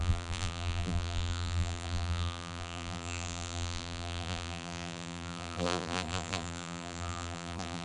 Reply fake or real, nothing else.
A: fake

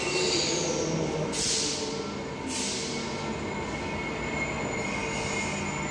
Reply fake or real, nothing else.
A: real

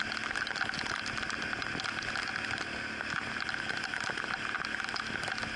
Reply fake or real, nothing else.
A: real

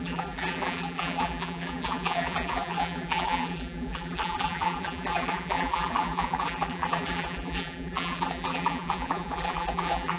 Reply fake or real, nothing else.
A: fake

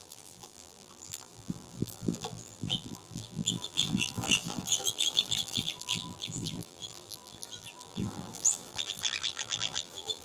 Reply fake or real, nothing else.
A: fake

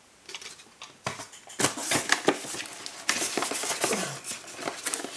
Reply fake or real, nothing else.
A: real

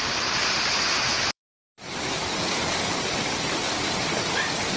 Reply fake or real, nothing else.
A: fake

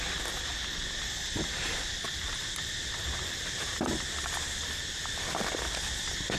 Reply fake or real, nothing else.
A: fake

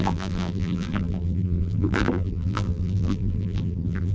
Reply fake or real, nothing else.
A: fake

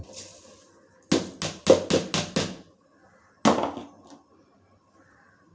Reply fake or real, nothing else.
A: real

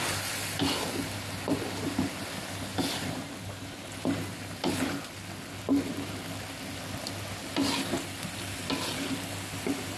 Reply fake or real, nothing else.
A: real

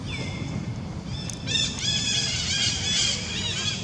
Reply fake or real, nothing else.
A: real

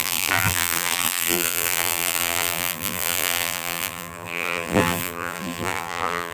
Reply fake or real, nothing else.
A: fake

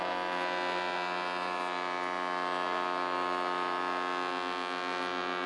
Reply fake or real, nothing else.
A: real